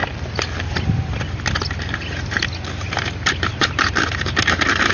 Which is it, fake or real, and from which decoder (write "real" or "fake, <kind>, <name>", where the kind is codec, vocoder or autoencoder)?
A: real